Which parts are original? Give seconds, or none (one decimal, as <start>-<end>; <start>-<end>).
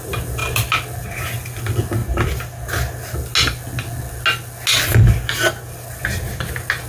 0.0-6.9